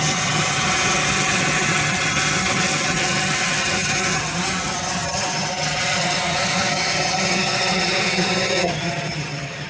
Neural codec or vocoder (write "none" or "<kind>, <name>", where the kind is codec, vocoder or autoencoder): vocoder, HiFi-GAN